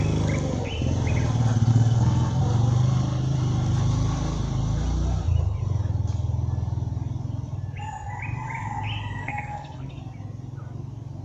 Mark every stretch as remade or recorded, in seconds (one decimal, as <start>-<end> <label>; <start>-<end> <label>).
0.0-1.7 recorded; 1.7-2.4 remade; 2.4-9.2 recorded; 9.2-9.9 remade; 9.9-11.2 recorded